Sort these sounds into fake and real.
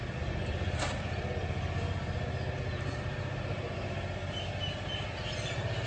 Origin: real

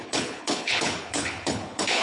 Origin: fake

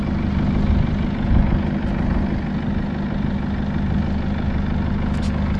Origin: real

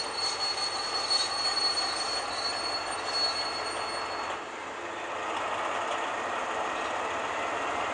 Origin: real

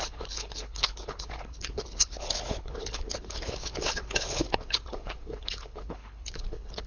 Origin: fake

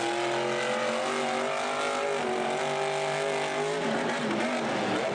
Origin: real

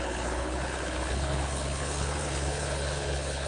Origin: fake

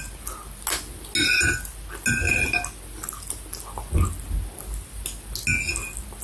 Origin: real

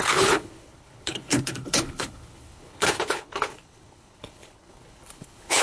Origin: fake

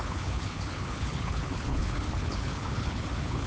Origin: fake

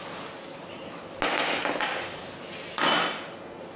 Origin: real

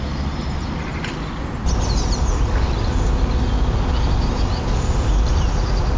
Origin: real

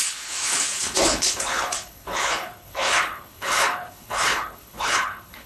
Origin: fake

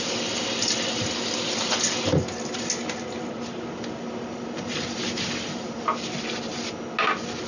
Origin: real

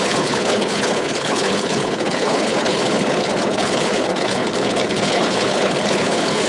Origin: fake